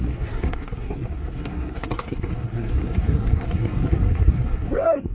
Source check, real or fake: fake